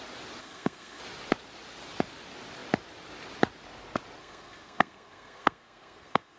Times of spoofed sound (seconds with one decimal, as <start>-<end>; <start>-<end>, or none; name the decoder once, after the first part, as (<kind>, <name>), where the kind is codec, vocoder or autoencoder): 0.4-1.0 (codec, SNAC); 4.2-6.4